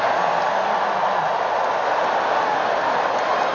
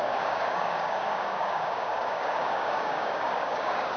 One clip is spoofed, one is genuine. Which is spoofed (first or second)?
second